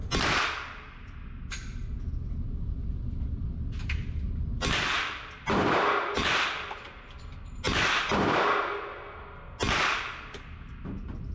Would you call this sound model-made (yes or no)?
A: no